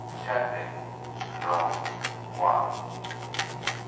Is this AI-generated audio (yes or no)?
yes